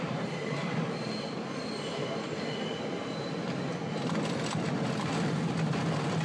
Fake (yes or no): no